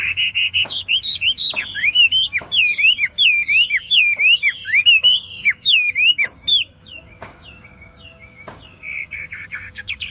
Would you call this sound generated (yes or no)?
yes